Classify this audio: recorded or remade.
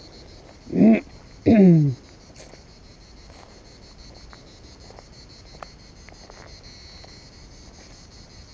recorded